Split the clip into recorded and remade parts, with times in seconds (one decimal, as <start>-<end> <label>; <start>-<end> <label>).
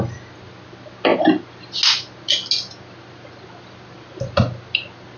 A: 0.0-5.2 recorded